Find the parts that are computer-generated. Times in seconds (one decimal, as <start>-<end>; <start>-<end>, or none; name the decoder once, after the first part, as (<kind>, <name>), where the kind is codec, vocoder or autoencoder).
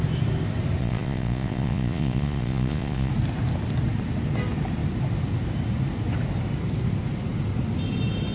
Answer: 0.8-3.1 (vocoder, Vocos)